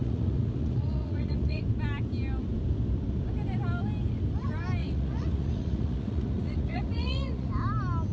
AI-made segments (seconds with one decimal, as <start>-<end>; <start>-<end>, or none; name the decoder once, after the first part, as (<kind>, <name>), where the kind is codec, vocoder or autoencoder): 0.0-1.6 (vocoder, Vocos); 4.8-7.5